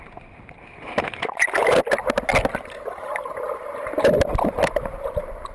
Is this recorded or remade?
recorded